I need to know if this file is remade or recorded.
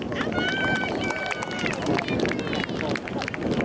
recorded